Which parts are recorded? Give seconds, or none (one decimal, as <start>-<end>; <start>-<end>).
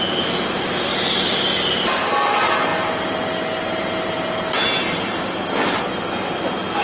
0.0-6.8